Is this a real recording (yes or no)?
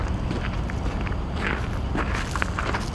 yes